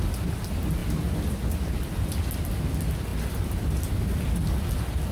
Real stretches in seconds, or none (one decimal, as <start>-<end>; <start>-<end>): 0.0-5.1